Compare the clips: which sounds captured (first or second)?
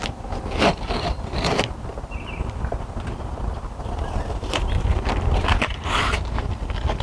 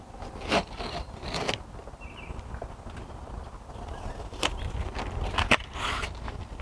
second